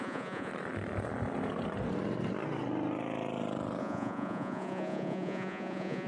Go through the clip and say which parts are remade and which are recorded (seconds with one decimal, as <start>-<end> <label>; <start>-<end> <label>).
0.0-0.5 remade; 0.5-3.8 recorded; 3.8-6.1 remade